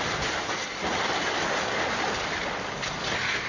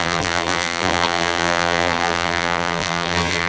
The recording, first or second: first